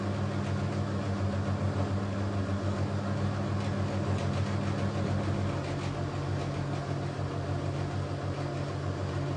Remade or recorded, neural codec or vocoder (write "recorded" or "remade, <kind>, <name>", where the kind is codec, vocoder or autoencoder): recorded